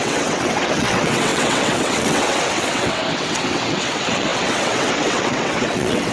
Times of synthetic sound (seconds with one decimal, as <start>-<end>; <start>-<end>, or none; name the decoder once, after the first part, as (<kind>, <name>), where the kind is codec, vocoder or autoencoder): 0.0-6.1 (vocoder, WaveNeXt)